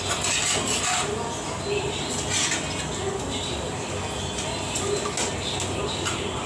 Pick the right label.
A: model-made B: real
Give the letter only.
B